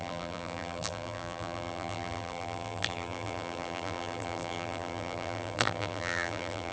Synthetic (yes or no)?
yes